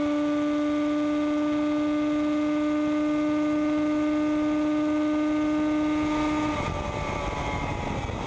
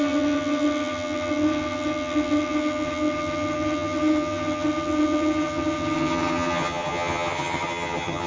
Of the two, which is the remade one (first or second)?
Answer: second